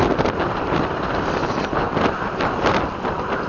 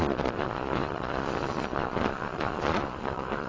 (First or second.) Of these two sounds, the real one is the first